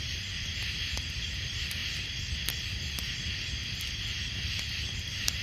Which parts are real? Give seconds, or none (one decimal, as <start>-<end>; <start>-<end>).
1.8-4.8